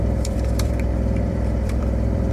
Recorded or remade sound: remade